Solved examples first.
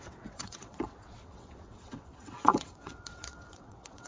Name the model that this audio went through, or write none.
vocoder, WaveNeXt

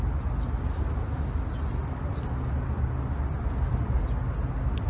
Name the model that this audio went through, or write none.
none